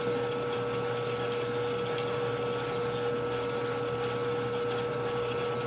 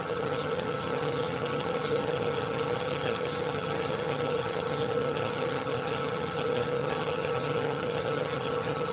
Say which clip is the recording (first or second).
first